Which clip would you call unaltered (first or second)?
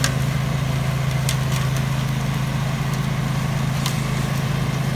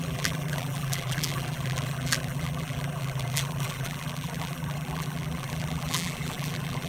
first